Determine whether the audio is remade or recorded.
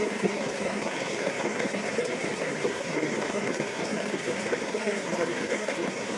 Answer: remade